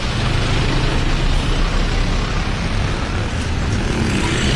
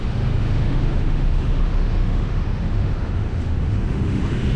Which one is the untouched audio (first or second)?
first